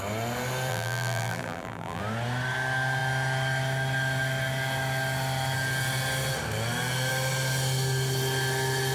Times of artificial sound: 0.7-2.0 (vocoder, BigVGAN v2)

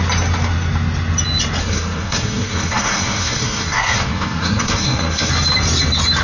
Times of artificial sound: 1.6-5.3 (codec, SNAC)

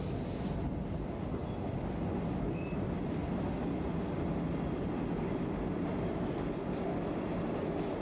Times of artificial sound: none

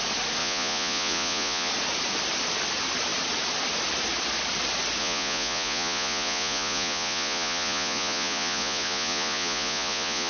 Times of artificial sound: 0.4-1.7 (vocoder, Vocos); 5.0-10.3

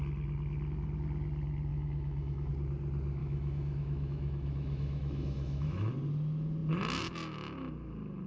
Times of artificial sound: 1.7-2.5 (autoencoder, DAC-VAE); 3.2-5.9

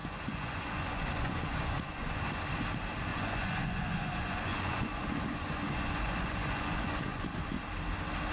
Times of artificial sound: 0.0-2.4 (vocoder, Vocos); 3.1-7.6